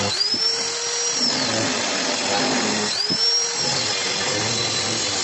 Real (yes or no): yes